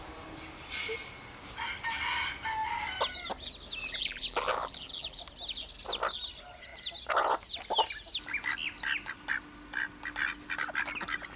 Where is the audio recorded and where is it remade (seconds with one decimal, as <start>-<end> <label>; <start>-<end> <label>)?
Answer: 0.0-3.8 recorded; 3.8-5.2 remade; 5.2-11.4 recorded